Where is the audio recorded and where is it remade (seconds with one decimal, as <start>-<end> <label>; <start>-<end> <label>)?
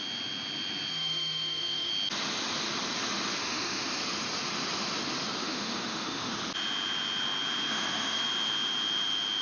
0.0-0.9 recorded; 0.9-1.9 remade; 1.9-3.4 recorded; 3.4-4.0 remade; 4.0-5.4 recorded; 5.4-6.3 remade; 6.3-7.7 recorded; 7.7-8.2 remade; 8.2-9.4 recorded